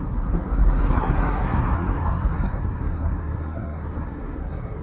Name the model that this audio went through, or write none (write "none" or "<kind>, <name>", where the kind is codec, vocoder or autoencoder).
codec, SNAC